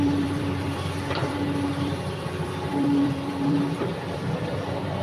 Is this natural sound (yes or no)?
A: no